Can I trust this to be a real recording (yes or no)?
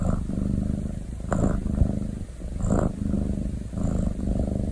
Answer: yes